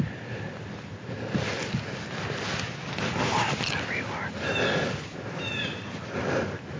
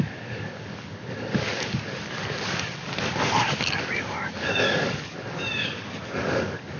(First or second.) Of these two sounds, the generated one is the second